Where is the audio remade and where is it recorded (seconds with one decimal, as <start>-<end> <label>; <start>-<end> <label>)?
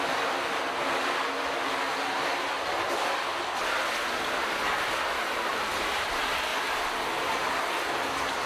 0.0-5.5 recorded; 5.5-6.1 remade; 6.1-6.5 recorded; 6.5-7.5 remade; 7.5-8.5 recorded